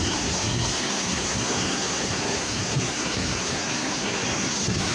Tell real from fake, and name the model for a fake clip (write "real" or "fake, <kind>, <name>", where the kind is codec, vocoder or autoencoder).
fake, codec, SNAC